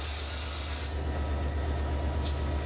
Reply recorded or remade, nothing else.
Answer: recorded